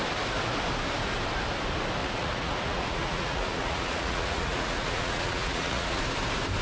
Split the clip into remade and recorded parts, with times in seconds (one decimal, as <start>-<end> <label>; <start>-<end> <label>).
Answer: 0.0-2.0 recorded; 2.0-6.0 remade; 6.0-6.6 recorded